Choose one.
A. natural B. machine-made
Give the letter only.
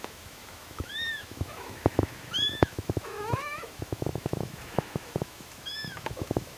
B